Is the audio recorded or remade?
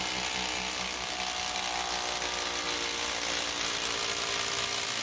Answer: recorded